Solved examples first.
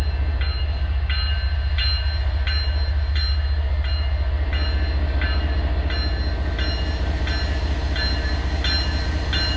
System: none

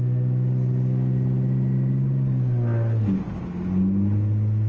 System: none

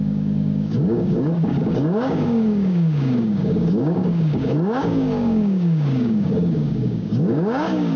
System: codec, DAC